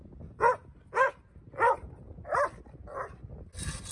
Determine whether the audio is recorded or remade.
recorded